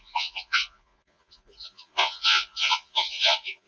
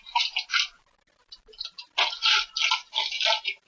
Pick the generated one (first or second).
first